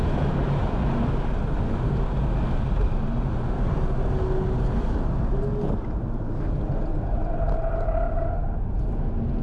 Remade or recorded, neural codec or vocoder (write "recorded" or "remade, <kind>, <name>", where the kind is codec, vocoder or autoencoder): recorded